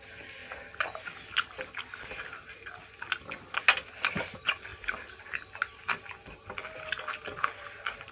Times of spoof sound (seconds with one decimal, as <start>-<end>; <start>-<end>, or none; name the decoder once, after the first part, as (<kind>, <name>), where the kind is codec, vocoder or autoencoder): none